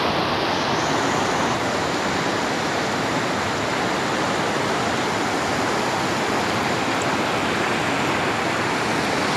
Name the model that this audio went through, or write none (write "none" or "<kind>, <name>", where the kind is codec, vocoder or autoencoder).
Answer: none